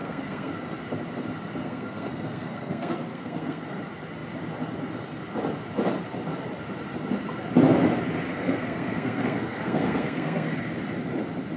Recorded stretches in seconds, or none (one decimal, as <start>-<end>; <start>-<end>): 0.5-1.6; 3.6-8.3; 10.7-11.6